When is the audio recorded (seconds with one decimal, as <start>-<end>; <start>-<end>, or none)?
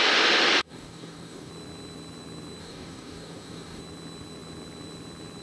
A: 0.0-0.6; 1.5-2.6; 3.8-5.4